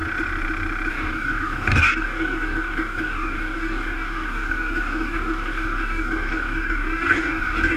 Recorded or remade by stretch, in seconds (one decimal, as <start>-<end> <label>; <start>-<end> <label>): 0.0-0.9 recorded; 0.9-7.8 remade